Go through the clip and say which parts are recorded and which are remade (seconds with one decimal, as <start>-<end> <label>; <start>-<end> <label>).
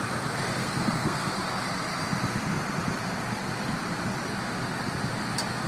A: 0.0-0.6 recorded; 0.6-1.3 remade; 1.3-5.7 recorded